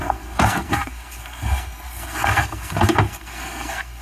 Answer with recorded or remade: remade